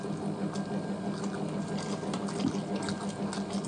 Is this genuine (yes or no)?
yes